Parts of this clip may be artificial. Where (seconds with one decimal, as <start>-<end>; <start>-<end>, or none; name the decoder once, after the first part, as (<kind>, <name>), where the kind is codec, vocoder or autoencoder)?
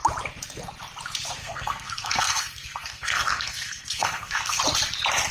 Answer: 1.4-4.6 (codec, SNAC)